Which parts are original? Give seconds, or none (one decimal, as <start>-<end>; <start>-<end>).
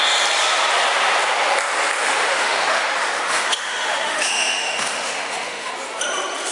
0.0-2.0; 5.7-6.5